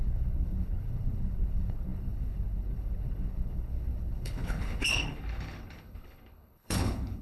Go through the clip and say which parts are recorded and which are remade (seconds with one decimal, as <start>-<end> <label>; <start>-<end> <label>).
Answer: 0.0-7.2 remade